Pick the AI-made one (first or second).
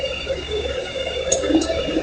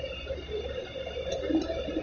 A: first